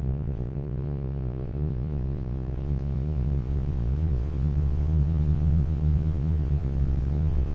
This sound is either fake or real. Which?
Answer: fake